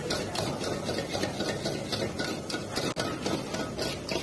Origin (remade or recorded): recorded